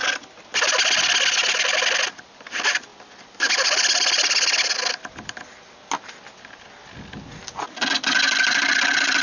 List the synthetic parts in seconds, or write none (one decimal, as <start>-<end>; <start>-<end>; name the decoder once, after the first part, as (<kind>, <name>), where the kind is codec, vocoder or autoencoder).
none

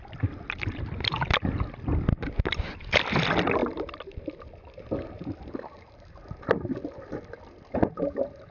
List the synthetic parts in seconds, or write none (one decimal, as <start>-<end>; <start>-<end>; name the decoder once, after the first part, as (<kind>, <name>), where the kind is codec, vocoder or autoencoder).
none

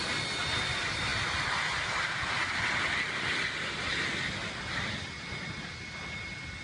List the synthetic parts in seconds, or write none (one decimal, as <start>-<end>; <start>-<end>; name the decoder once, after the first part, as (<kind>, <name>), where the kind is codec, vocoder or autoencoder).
none

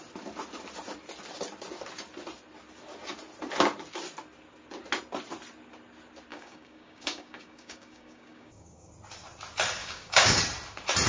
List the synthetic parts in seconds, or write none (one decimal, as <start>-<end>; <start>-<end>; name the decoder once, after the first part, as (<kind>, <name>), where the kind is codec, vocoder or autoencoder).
6.3-8.9 (codec, DAC); 9.8-10.4

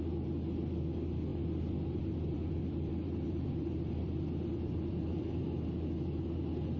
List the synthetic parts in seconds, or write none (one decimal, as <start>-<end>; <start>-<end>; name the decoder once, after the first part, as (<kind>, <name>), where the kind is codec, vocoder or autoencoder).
1.3-5.4 (vocoder, BigVGAN v2)